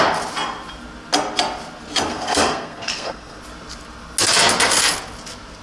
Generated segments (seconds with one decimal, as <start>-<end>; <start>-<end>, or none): 2.1-3.4